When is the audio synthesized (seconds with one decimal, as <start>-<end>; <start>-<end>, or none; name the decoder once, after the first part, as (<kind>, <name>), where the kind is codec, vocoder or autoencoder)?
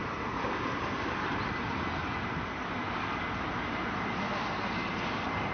0.0-0.6 (vocoder, BigVGAN v2); 2.0-2.8